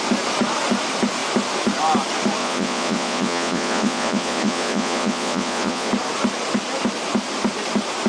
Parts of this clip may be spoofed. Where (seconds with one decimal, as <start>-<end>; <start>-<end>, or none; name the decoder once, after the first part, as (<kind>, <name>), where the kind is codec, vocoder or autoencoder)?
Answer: 2.4-5.9 (vocoder, Vocos)